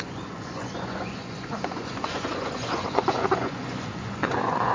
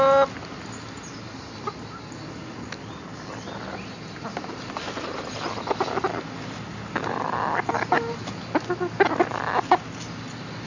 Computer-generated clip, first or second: first